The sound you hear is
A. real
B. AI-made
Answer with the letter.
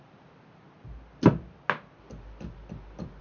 A